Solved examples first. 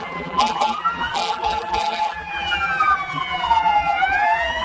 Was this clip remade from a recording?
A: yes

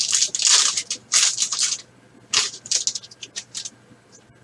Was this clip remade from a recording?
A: no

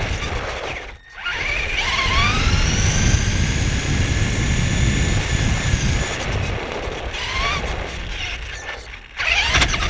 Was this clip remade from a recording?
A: no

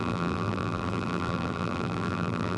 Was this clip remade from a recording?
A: yes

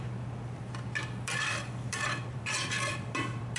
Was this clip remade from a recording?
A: yes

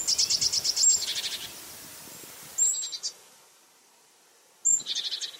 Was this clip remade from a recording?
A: no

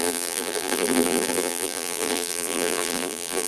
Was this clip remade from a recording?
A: yes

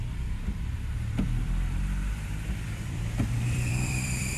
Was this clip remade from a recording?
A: yes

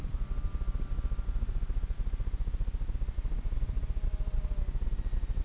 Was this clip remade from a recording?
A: no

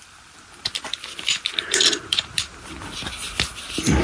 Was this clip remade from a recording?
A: yes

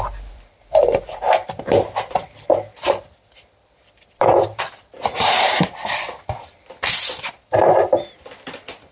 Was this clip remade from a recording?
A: yes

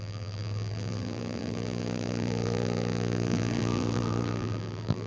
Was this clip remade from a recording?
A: yes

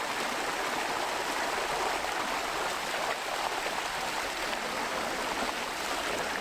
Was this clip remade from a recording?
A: no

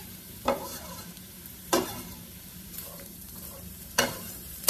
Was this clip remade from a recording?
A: yes